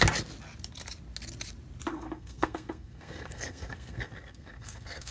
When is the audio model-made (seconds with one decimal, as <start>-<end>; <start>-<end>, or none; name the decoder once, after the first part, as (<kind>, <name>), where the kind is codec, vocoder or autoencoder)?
1.9-5.1 (codec, SNAC)